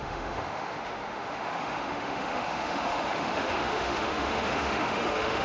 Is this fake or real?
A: fake